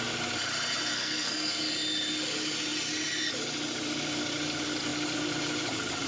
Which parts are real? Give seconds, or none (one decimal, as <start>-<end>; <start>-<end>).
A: 0.0-0.9; 1.6-6.1